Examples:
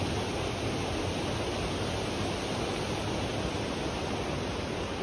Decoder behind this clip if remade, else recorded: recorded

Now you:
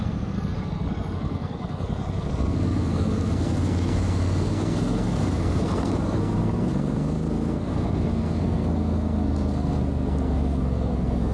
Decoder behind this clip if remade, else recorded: remade, codec, SNAC